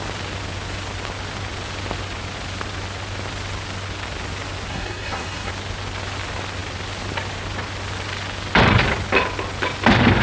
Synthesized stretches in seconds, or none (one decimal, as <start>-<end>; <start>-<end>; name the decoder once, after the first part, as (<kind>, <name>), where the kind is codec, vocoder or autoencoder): 4.7-5.5 (codec, SNAC)